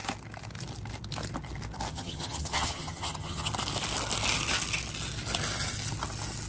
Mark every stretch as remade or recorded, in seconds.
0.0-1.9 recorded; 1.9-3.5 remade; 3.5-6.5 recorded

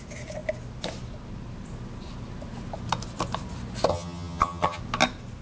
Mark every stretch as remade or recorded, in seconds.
0.0-3.9 recorded; 3.9-4.8 remade; 4.8-5.4 recorded

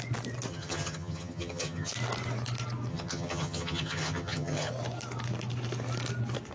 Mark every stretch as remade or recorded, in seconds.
0.0-0.5 recorded; 0.5-1.9 remade; 1.9-2.9 recorded; 2.9-4.7 remade; 4.7-6.5 recorded

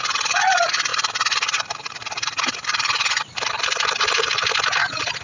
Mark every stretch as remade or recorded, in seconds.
0.0-5.2 recorded

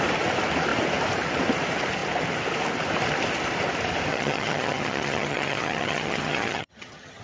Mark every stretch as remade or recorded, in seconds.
0.0-4.1 recorded; 4.1-7.2 remade

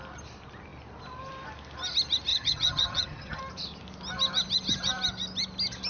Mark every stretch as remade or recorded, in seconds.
0.0-2.3 recorded; 2.3-3.4 remade; 3.4-5.9 recorded